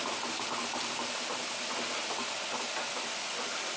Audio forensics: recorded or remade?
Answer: recorded